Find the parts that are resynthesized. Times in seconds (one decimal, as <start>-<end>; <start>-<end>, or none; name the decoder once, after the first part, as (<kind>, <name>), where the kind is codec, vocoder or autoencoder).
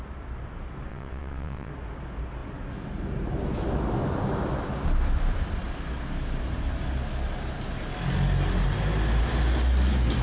0.9-1.7 (vocoder, WaveNeXt)